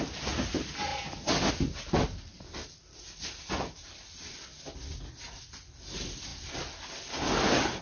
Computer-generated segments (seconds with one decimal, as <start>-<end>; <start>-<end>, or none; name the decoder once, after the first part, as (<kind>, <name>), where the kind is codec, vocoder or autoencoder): none